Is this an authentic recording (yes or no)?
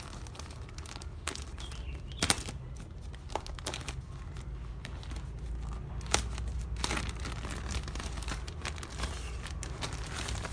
yes